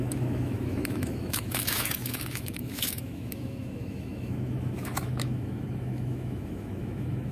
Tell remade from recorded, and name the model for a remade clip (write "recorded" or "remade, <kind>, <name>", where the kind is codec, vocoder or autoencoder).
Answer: remade, autoencoder, DAC-VAE